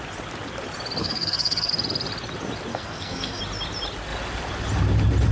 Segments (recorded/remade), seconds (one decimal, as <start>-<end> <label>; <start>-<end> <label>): 0.0-1.0 recorded; 1.0-1.7 remade; 1.7-2.7 recorded; 2.7-3.4 remade; 3.4-5.3 recorded